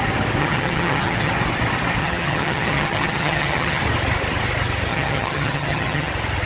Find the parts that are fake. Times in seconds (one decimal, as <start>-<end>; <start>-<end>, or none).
0.4-1.3; 2.0-3.8; 4.9-6.1